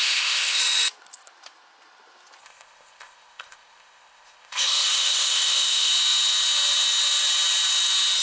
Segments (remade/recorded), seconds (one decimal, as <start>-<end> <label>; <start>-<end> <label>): 0.0-0.6 remade; 0.6-2.4 recorded; 2.4-5.9 remade; 5.9-8.2 recorded